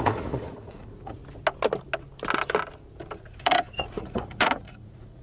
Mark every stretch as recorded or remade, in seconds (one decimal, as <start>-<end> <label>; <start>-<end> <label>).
0.0-1.2 remade; 1.2-3.2 recorded; 3.2-5.2 remade